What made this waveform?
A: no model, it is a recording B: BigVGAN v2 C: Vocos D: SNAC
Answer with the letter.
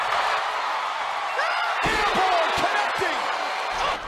A